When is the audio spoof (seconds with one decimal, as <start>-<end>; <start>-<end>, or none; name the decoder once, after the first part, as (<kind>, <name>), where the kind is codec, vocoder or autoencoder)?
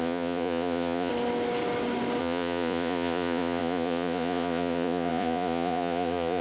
0.0-1.1 (vocoder, Vocos); 2.2-6.4